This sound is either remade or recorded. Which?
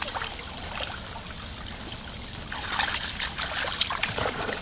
recorded